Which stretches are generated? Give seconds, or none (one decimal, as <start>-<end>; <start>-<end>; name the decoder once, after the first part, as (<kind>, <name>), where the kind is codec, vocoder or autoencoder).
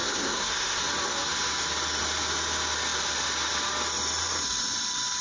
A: 0.0-0.8 (codec, SNAC)